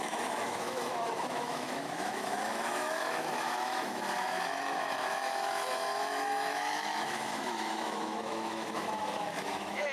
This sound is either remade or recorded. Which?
remade